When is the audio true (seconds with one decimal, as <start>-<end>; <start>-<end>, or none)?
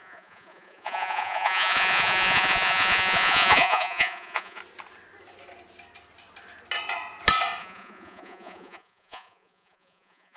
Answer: 4.6-7.6